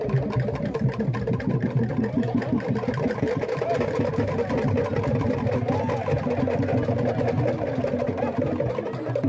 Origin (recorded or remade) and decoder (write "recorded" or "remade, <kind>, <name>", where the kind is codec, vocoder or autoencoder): recorded